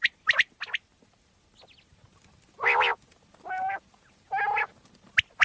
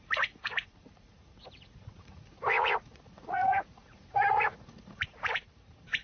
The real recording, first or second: first